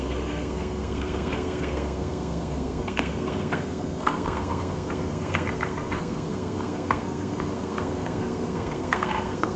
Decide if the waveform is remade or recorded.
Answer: remade